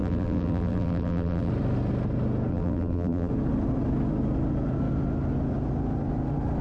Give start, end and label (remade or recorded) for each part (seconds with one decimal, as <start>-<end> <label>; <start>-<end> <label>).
0.0-1.5 remade; 1.5-2.5 recorded; 2.5-3.3 remade; 3.3-6.6 recorded